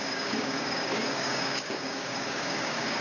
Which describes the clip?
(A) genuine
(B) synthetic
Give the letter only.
B